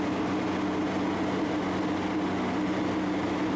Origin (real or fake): real